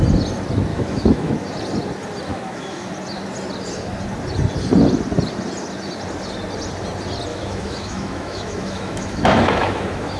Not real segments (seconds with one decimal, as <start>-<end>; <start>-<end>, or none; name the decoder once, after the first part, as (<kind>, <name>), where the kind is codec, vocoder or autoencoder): 0.7-1.3 (autoencoder, DAC-VAE); 2.3-2.9; 7.3-10.2